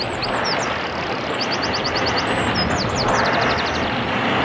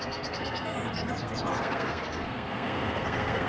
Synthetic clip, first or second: second